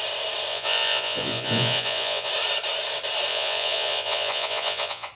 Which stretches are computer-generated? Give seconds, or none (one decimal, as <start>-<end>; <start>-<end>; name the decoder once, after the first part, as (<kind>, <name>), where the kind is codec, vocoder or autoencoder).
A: 0.5-2.3 (vocoder, Vocos); 3.3-5.1